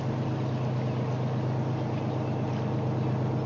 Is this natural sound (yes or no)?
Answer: yes